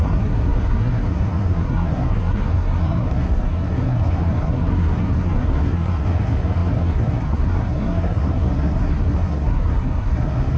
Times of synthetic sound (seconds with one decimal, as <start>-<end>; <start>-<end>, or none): 0.0-10.6